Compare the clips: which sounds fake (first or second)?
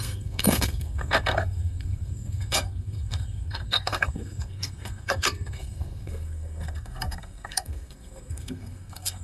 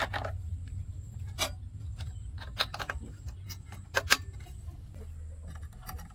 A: first